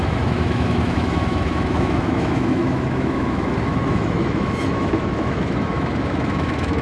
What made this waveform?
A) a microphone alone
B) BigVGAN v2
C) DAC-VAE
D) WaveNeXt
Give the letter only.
C